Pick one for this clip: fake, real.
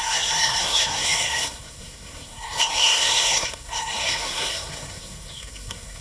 fake